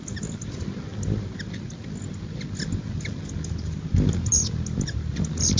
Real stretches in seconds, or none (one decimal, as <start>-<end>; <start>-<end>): 0.0-5.6